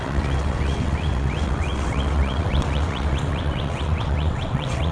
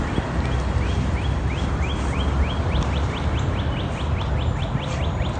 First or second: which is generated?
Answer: first